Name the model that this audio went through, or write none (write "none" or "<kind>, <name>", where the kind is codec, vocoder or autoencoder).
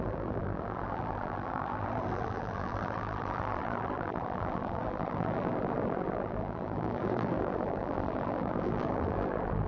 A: vocoder, BigVGAN v2